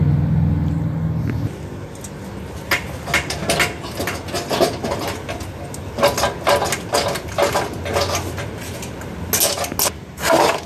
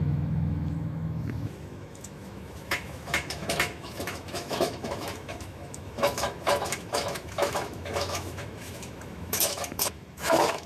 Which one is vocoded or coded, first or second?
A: second